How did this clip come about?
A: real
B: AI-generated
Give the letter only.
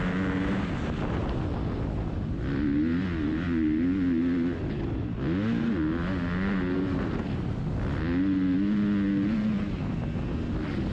A